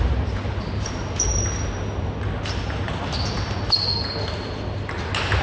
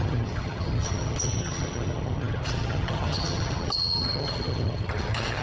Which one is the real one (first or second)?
first